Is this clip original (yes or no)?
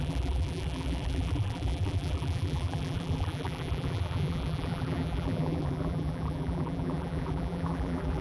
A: no